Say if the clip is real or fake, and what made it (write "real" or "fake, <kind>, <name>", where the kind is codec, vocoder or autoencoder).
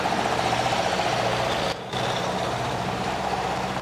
fake, vocoder, BigVGAN v2